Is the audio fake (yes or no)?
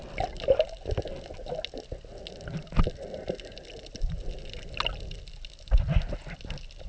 no